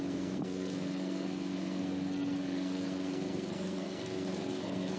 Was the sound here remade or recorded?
remade